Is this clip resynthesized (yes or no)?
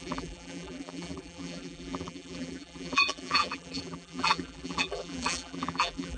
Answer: yes